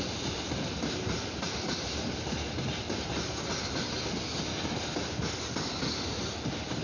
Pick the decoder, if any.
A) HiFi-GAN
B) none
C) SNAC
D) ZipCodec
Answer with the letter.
B